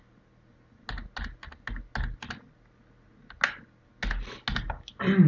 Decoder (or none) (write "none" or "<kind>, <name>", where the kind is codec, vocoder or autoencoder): none